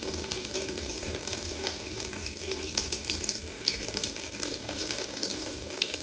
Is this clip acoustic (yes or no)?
no